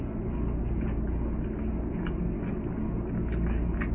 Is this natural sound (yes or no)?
yes